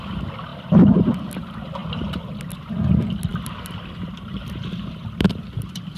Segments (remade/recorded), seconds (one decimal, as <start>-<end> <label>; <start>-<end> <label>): 0.0-0.5 recorded; 0.5-1.2 remade; 1.2-1.8 recorded; 1.8-2.4 remade; 2.4-3.3 recorded; 3.3-6.0 remade

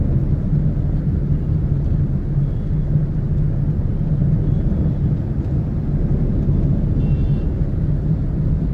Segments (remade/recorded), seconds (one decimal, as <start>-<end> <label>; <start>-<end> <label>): 0.0-7.4 recorded; 7.4-8.7 remade

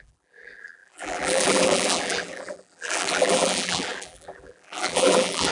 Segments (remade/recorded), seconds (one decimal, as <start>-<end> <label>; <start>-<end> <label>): 0.0-5.5 remade

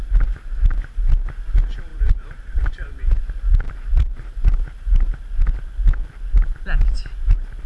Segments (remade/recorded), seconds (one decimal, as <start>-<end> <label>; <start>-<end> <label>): 0.0-1.9 recorded; 1.9-3.2 remade; 3.2-3.9 recorded; 3.9-5.2 remade; 5.2-7.7 recorded

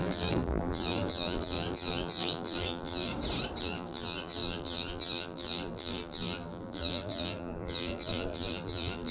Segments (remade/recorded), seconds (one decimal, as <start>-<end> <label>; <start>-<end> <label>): 0.0-3.1 remade; 3.1-3.6 recorded; 3.6-9.1 remade

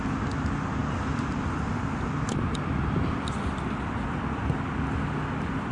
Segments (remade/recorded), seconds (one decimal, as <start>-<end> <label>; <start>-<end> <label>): 0.0-5.7 recorded

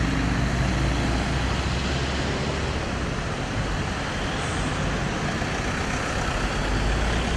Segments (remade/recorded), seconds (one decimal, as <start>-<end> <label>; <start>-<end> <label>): 0.0-7.4 recorded